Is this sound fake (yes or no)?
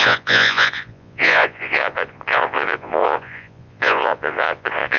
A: yes